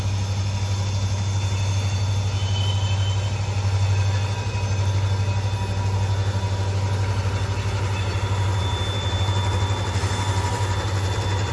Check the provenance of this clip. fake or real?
real